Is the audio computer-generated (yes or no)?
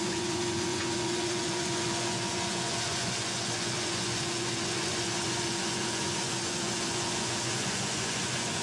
yes